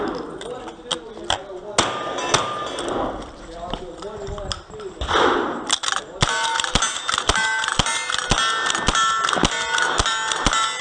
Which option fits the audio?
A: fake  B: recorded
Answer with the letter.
B